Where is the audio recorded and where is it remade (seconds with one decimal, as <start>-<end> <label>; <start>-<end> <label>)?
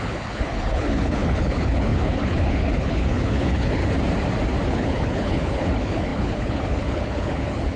0.0-3.8 remade; 3.8-4.7 recorded; 4.7-7.8 remade